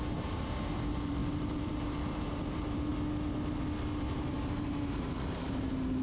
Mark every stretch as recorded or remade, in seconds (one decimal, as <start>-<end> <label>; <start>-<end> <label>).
0.0-2.9 remade; 2.9-4.0 recorded; 4.0-6.0 remade